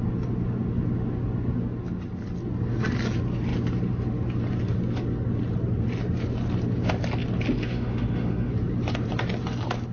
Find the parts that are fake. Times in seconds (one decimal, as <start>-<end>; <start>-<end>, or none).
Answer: 7.6-8.5